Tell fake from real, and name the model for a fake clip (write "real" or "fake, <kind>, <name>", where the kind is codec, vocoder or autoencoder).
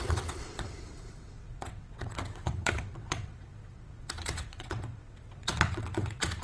fake, vocoder, WaveNeXt